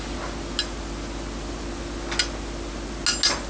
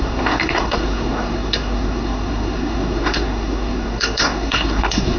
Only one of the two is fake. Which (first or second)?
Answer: second